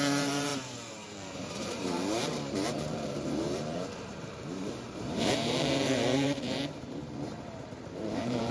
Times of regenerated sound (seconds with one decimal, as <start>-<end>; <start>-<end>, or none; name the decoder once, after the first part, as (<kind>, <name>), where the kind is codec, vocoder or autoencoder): 0.0-8.5 (vocoder, BigVGAN v2)